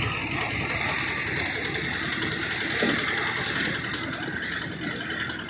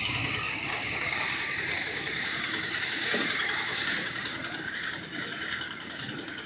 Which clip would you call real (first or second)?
first